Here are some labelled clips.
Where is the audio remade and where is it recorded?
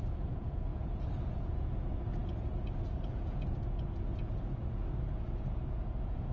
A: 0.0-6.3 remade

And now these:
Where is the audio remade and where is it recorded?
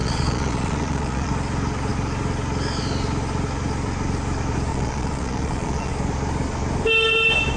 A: 0.0-1.3 remade; 1.3-4.7 recorded; 4.7-5.9 remade; 5.9-7.6 recorded